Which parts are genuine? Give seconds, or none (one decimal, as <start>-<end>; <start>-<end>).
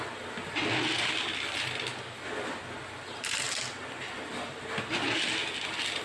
0.0-6.0